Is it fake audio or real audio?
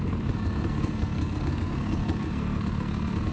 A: fake